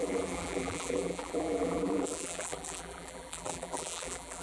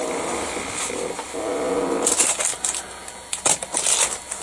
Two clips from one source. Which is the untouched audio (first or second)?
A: second